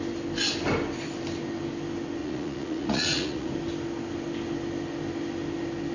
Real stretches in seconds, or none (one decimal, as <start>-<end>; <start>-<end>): 0.0-2.2; 3.5-5.9